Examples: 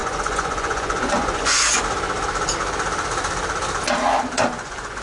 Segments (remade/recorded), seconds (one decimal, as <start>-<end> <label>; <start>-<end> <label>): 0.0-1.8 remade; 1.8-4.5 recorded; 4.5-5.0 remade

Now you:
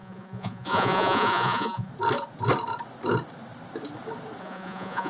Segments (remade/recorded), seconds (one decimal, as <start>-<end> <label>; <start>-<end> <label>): 0.0-1.9 remade; 1.9-4.4 recorded; 4.4-5.1 remade

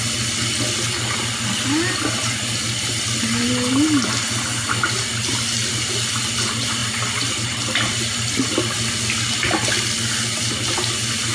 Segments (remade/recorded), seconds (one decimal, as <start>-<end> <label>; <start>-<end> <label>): 0.0-11.3 recorded

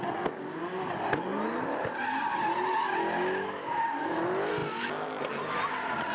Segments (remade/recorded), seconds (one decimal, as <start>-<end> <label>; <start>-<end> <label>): 0.0-6.1 recorded

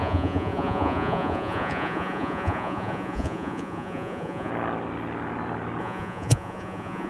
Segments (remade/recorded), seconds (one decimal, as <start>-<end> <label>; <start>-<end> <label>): 0.0-4.5 remade; 4.5-5.8 recorded; 5.8-7.1 remade

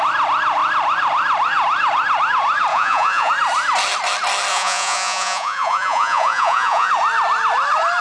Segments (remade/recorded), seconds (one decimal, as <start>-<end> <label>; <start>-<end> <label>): 0.0-2.7 recorded; 2.7-3.3 remade; 3.3-4.5 recorded; 4.5-6.9 remade; 6.9-8.0 recorded

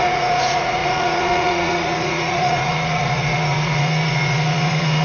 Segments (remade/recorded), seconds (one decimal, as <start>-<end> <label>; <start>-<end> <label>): 0.0-5.0 remade